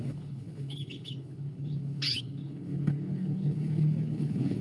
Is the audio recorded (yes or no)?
no